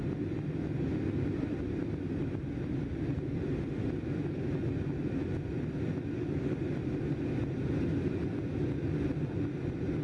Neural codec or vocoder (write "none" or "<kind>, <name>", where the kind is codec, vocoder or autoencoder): none